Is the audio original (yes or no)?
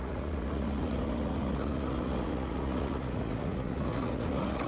no